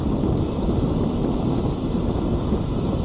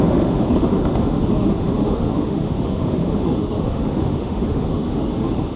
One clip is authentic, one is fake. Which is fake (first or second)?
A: second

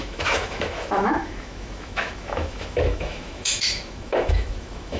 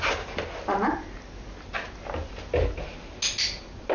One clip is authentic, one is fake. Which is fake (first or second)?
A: first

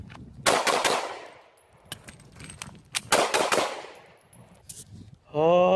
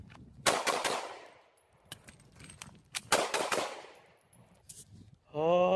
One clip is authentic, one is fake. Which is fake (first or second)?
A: second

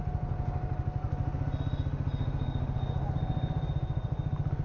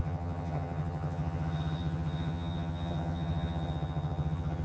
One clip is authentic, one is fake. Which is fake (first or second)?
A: second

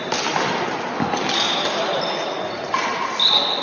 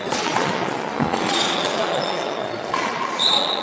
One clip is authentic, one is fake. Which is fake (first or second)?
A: second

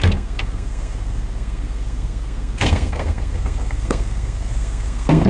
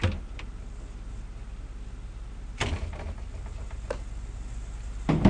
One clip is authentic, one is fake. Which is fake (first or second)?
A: first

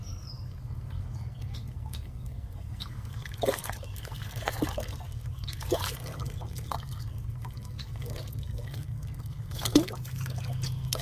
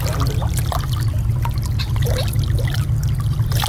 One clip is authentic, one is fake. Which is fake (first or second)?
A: first